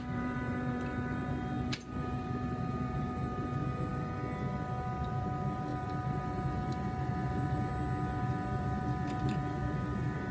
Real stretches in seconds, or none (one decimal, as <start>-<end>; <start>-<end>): 7.7-8.2